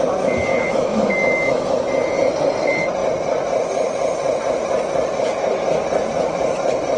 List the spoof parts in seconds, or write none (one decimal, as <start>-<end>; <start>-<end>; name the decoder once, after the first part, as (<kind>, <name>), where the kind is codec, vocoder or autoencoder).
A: 0.5-1.7 (autoencoder, DAC-VAE)